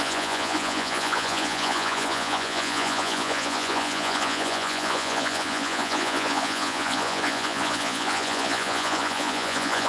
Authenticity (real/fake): fake